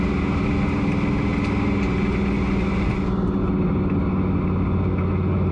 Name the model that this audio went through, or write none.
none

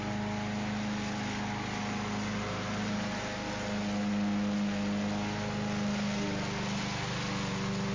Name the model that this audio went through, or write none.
none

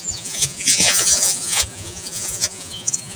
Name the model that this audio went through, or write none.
vocoder, Vocos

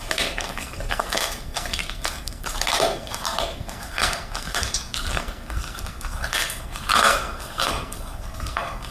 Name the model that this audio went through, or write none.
codec, SNAC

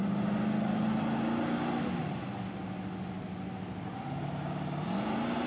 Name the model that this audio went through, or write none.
none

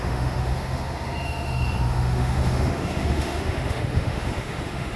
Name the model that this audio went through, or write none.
autoencoder, DAC-VAE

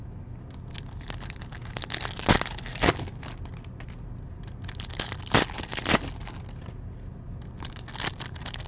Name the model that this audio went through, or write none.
none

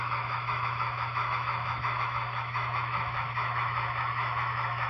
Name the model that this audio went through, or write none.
autoencoder, DAC-VAE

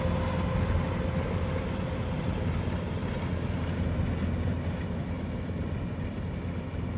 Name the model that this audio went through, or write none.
none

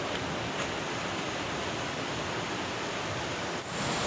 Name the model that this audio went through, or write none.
none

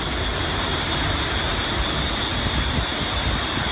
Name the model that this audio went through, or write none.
none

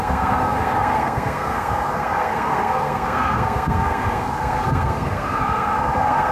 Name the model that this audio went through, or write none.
codec, SNAC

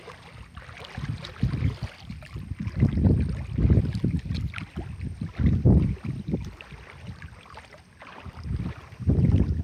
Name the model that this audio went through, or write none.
none